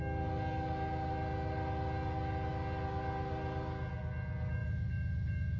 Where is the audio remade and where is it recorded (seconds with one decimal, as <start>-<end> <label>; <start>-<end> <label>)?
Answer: 0.0-4.6 recorded; 4.6-5.6 remade